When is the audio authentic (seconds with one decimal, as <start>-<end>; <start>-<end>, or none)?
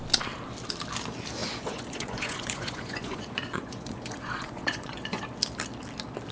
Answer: 0.0-1.4; 5.2-6.3